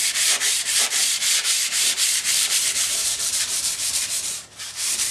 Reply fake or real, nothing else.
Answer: fake